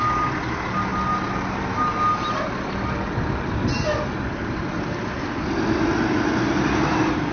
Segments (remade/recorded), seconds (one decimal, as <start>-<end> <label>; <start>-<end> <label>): 0.0-7.3 recorded